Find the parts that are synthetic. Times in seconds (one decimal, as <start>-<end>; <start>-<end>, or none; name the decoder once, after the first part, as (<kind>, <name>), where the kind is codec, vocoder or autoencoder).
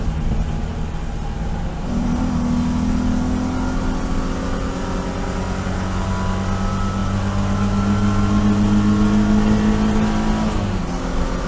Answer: 0.7-2.3 (vocoder, BigVGAN v2)